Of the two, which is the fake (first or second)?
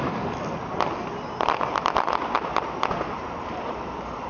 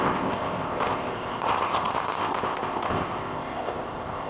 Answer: second